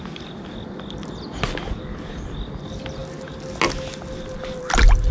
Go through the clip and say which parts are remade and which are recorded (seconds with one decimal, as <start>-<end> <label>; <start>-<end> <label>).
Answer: 0.0-5.1 recorded

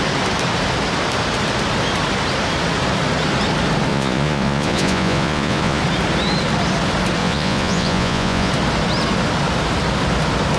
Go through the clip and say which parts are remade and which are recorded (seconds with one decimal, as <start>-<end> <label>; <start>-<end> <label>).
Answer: 0.0-3.9 recorded; 3.9-5.8 remade; 5.8-7.2 recorded; 7.2-8.5 remade; 8.5-10.6 recorded

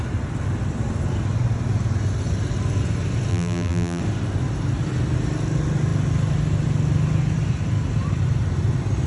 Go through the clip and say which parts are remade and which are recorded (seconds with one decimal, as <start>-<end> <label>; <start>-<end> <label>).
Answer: 0.0-3.3 recorded; 3.3-4.0 remade; 4.0-9.1 recorded

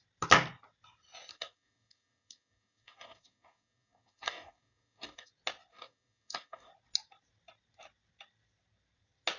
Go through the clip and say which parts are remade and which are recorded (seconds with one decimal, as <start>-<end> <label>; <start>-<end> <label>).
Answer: 0.0-1.3 recorded; 1.3-5.3 remade; 5.3-5.7 recorded; 5.7-6.7 remade; 6.7-9.4 recorded

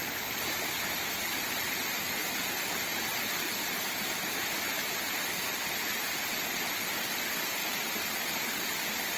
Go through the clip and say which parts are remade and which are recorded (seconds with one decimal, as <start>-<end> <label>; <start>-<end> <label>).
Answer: 0.0-7.6 recorded; 7.6-8.1 remade; 8.1-9.2 recorded

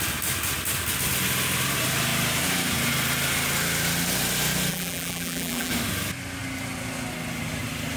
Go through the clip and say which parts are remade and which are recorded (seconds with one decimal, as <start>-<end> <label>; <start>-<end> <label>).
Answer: 0.0-4.7 recorded; 4.7-5.7 remade; 5.7-8.0 recorded

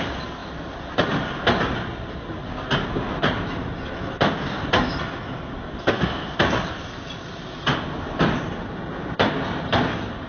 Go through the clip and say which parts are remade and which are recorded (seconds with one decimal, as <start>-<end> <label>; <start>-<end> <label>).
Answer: 0.0-5.8 recorded; 5.8-6.4 remade; 6.4-10.3 recorded

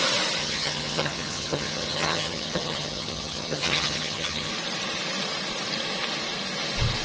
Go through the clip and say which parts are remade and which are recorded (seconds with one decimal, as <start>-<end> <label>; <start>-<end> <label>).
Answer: 0.0-0.4 recorded; 0.4-4.5 remade; 4.5-7.0 recorded